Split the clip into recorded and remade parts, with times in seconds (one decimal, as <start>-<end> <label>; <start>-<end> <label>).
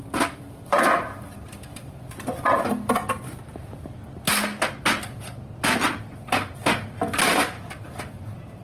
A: 0.0-3.0 remade; 3.0-6.3 recorded; 6.3-8.6 remade